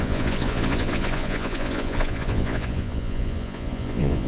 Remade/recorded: remade